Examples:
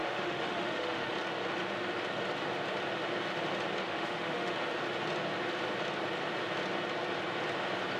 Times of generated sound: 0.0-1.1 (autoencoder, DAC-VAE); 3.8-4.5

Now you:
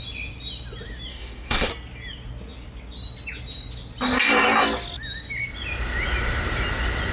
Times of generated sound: 1.1-1.7 (autoencoder, DAC-VAE)

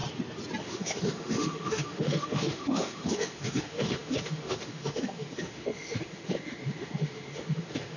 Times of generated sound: 0.6-8.0 (autoencoder, DAC-VAE)